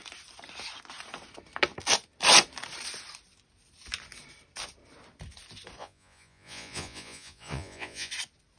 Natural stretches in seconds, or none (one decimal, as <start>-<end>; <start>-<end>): 0.0-5.8; 8.1-8.6